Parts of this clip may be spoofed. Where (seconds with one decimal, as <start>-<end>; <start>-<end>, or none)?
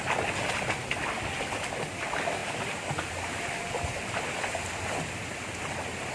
none